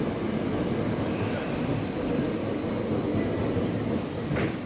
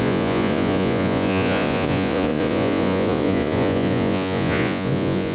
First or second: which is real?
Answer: first